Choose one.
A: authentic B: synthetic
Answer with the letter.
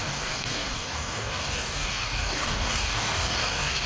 B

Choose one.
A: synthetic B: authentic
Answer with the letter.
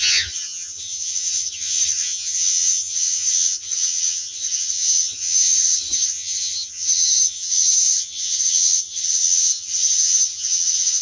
A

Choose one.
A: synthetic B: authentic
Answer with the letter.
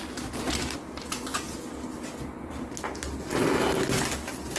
B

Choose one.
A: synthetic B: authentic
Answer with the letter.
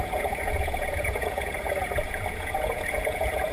A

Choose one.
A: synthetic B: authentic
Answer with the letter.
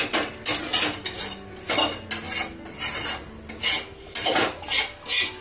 B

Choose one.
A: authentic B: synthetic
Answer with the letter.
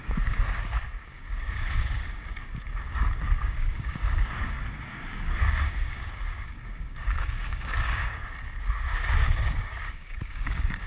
B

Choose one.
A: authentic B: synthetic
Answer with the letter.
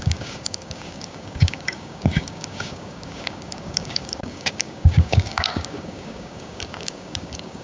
B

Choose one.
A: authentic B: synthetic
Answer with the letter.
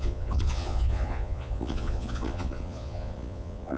B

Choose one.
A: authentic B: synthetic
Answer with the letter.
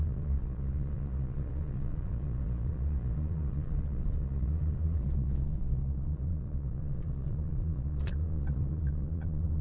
B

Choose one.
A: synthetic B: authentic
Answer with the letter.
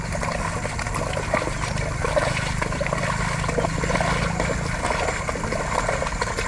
B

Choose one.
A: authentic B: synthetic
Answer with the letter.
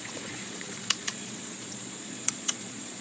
B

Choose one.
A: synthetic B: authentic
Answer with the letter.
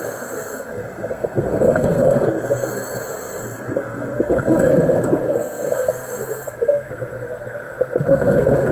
A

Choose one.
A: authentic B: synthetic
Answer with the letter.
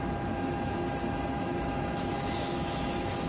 B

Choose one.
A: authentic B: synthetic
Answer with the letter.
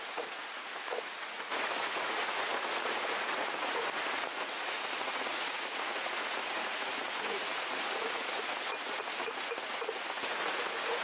B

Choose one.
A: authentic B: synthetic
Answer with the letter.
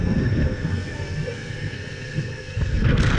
B